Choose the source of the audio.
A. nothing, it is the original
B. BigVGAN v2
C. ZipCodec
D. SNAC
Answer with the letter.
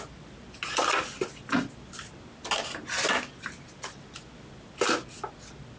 A